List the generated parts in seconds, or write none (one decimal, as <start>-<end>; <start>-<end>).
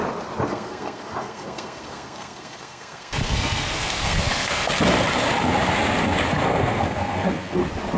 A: 0.5-4.7; 6.3-7.6